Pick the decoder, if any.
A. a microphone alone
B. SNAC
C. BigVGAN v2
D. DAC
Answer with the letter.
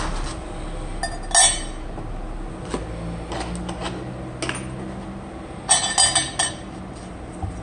A